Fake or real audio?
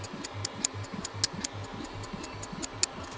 real